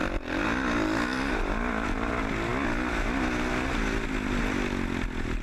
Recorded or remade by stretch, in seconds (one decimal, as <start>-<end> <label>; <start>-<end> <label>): 0.0-5.4 recorded